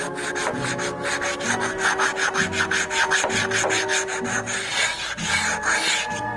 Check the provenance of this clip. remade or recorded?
recorded